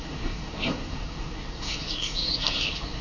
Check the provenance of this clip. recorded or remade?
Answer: remade